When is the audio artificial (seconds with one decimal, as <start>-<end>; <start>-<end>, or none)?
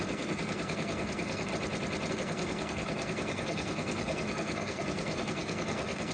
0.0-1.5; 2.1-6.1